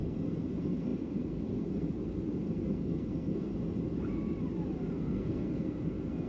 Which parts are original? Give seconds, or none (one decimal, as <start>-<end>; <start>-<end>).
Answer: 3.5-4.9